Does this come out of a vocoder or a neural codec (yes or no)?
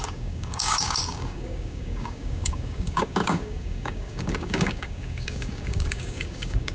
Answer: yes